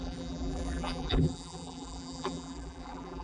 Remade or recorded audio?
remade